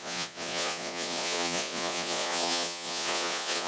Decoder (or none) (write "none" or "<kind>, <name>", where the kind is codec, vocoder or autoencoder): vocoder, Vocos